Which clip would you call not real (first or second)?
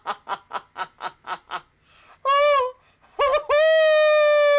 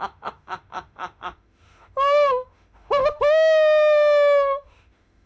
second